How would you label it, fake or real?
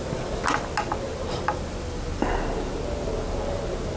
real